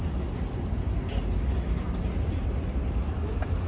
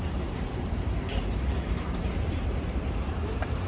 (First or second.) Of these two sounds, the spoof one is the second